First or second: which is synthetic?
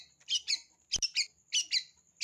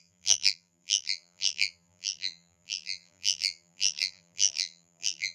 second